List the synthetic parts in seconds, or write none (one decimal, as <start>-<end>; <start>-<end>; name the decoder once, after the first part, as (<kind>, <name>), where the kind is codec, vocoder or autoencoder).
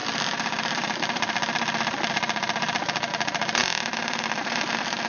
0.0-3.1 (vocoder, BigVGAN v2); 3.6-4.2